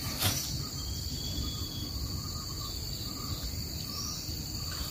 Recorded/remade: recorded